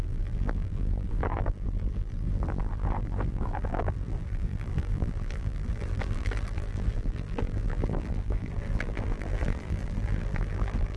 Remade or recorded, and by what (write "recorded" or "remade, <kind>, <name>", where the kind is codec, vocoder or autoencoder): remade, vocoder, BigVGAN v2